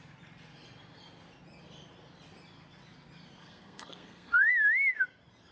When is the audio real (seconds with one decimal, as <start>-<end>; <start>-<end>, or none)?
0.0-3.4; 4.5-5.5